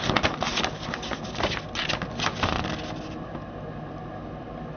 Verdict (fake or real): real